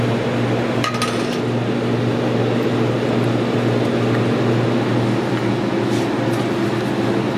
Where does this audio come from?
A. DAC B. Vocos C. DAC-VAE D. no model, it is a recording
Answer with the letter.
D